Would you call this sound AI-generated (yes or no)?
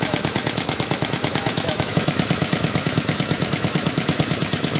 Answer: yes